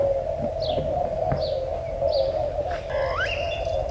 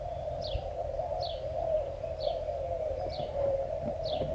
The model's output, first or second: second